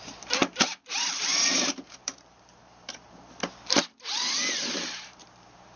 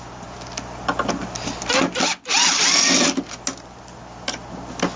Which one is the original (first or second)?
second